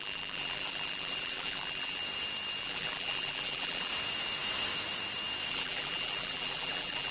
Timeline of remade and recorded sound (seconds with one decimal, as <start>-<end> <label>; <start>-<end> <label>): 0.0-2.0 remade; 2.0-2.6 recorded; 2.6-3.9 remade; 3.9-5.5 recorded; 5.5-7.1 remade